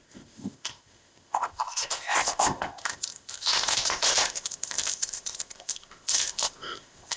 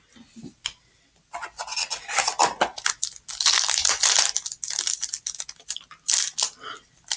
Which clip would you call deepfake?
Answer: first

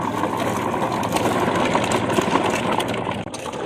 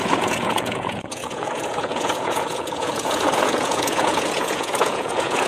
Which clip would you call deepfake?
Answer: second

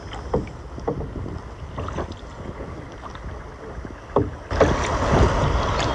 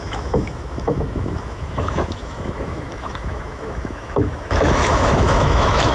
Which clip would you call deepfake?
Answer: second